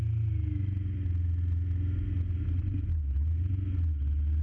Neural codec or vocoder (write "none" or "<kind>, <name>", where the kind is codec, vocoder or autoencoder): none